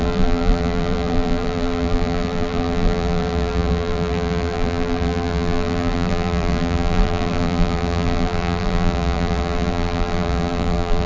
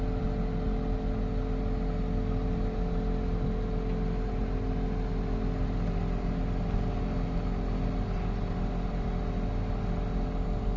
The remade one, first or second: first